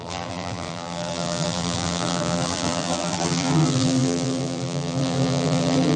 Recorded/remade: remade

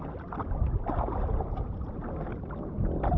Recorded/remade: recorded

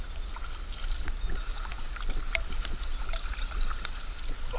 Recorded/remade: recorded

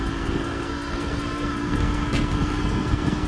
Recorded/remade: remade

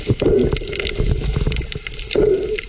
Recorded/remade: recorded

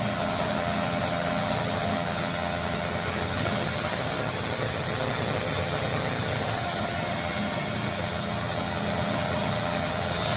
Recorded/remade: remade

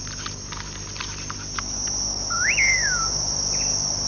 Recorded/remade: recorded